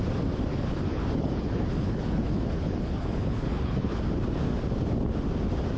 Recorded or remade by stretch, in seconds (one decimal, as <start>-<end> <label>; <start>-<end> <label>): 0.0-0.5 recorded; 0.5-4.0 remade; 4.0-5.8 recorded